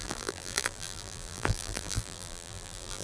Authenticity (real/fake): fake